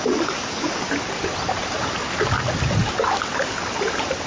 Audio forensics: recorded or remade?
recorded